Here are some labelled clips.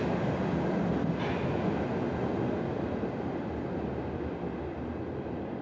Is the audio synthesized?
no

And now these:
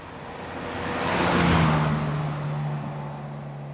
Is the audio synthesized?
no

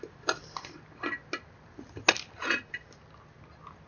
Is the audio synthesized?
no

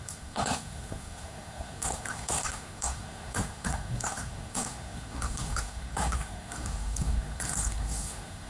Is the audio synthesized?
yes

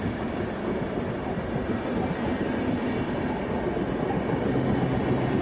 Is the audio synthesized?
no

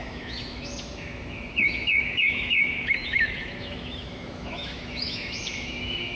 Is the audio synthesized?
yes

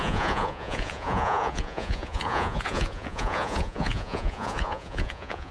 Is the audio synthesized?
yes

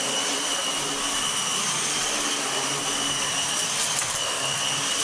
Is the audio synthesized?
yes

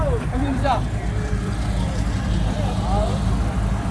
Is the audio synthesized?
no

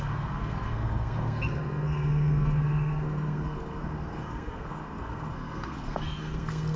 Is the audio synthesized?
yes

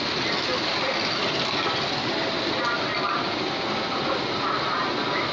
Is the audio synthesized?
no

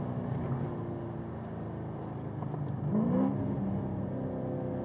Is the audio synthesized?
no